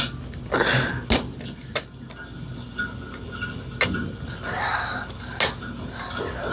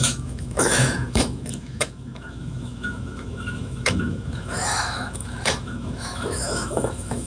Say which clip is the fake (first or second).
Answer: second